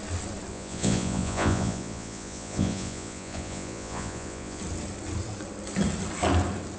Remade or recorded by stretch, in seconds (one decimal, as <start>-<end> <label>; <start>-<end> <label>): 0.0-0.5 recorded; 0.5-4.6 remade; 4.6-6.8 recorded